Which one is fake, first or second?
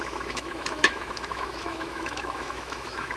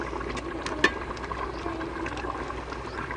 first